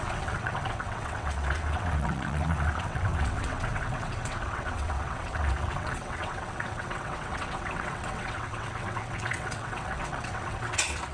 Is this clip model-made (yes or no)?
yes